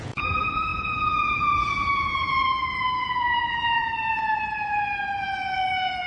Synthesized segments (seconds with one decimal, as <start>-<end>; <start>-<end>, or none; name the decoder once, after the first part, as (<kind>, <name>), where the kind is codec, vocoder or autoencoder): 0.0-6.1 (vocoder, Vocos)